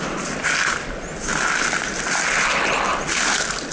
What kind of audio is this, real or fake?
real